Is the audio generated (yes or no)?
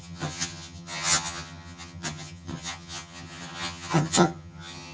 yes